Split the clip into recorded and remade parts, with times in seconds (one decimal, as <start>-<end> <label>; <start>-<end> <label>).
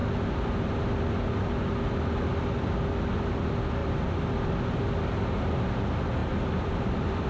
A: 0.0-3.8 recorded; 3.8-4.5 remade; 4.5-6.2 recorded; 6.2-7.3 remade